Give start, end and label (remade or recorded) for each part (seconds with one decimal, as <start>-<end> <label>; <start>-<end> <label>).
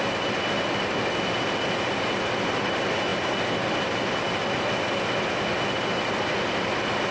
0.0-7.1 recorded